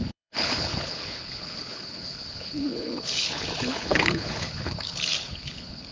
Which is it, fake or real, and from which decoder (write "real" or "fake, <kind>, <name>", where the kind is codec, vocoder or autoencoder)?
fake, codec, HILCodec